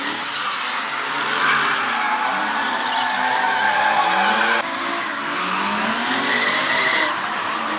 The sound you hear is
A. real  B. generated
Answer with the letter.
A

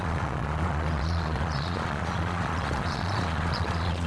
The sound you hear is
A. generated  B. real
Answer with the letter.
A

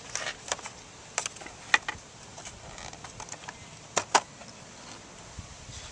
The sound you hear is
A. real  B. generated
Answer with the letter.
A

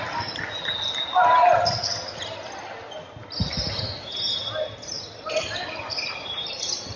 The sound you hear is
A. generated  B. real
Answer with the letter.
B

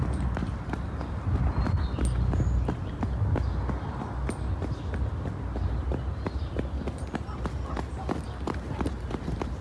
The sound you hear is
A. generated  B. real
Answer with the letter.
B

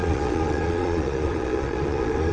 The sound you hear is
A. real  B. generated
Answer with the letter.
B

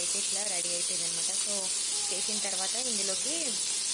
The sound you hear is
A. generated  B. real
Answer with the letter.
B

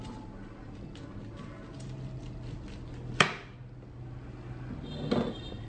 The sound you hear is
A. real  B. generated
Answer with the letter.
A